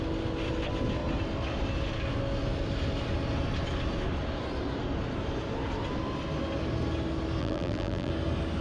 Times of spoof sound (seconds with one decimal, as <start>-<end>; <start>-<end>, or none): 7.4-8.1